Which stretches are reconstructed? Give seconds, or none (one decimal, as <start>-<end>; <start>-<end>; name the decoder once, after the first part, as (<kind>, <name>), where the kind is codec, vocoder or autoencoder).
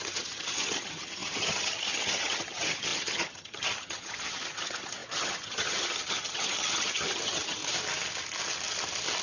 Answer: 0.0-7.6 (vocoder, HiFi-GAN)